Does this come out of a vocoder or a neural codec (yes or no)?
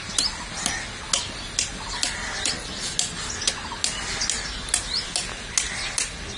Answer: no